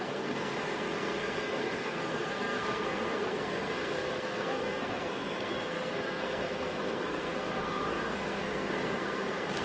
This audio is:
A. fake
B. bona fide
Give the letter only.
A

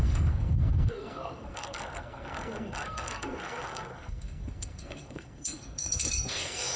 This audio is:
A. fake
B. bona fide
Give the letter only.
A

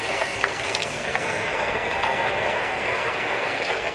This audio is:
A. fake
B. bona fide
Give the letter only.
A